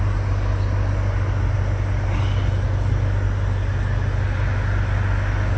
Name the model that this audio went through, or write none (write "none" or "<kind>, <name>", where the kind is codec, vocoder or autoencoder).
none